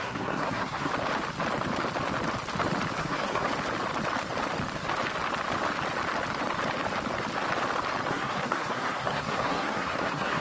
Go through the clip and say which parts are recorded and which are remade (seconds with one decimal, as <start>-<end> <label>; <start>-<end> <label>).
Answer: 0.0-0.9 remade; 0.9-3.0 recorded; 3.0-3.5 remade; 3.5-8.1 recorded; 8.1-10.4 remade

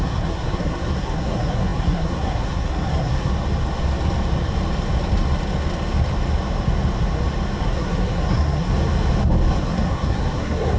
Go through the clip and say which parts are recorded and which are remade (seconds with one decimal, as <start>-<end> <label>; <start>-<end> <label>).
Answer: 0.0-3.3 remade; 3.3-7.6 recorded; 7.6-8.7 remade; 8.7-9.6 recorded; 9.6-10.8 remade

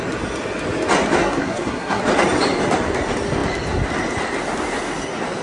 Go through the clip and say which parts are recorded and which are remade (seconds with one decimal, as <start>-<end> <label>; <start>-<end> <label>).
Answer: 0.0-1.2 recorded; 1.2-2.0 remade; 2.0-5.4 recorded

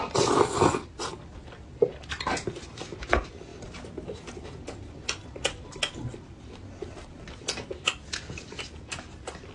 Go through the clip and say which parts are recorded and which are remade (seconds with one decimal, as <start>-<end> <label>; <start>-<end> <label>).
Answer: 0.0-9.5 recorded

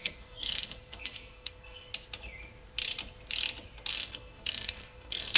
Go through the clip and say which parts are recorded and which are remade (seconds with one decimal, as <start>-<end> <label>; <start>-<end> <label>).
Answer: 0.0-1.9 remade; 1.9-3.9 recorded; 3.9-5.4 remade

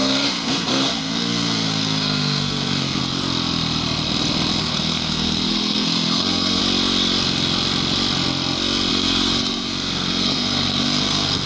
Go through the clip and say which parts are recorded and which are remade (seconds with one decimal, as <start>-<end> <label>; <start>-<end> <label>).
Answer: 0.0-3.0 remade; 3.0-4.6 recorded; 4.6-6.6 remade; 6.6-8.9 recorded; 8.9-11.5 remade